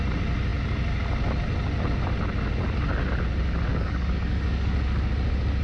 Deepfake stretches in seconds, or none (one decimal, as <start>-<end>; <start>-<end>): 3.7-5.1